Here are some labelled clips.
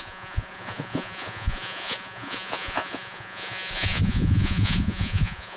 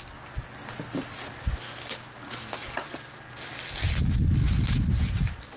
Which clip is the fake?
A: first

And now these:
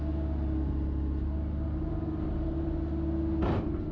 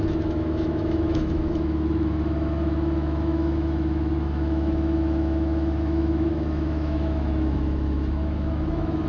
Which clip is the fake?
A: second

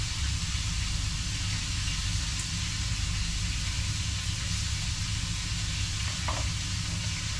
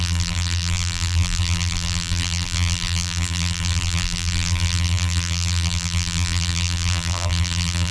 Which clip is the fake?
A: second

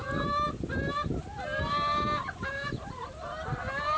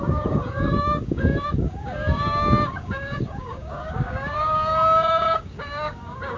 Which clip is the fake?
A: second